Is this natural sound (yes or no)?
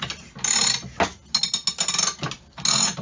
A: yes